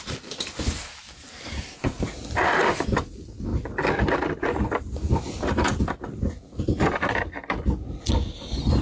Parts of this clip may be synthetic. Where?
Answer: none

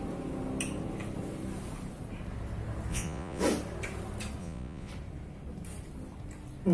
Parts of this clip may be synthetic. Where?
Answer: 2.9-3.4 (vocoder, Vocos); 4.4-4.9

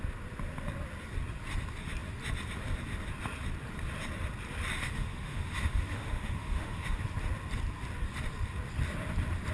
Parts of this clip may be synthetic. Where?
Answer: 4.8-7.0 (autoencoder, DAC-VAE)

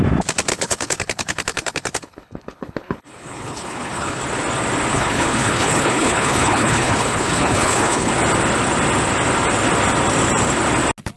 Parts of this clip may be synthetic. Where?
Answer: 0.5-4.2 (codec, HILCodec); 4.9-8.1

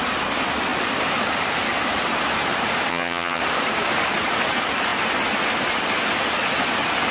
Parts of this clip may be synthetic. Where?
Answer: 2.9-3.4 (vocoder, HiFi-GAN)